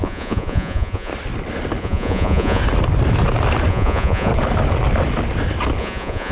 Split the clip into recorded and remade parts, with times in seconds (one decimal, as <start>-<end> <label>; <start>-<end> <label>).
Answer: 0.0-1.1 remade; 1.1-1.8 recorded; 1.8-2.6 remade; 2.6-3.7 recorded; 3.7-4.3 remade; 4.3-5.8 recorded; 5.8-6.3 remade

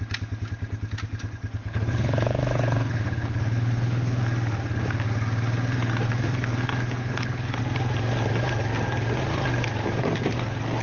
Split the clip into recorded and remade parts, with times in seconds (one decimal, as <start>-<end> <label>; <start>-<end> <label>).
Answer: 0.0-1.6 recorded; 1.6-4.2 remade; 4.2-7.0 recorded; 7.0-7.6 remade; 7.6-10.8 recorded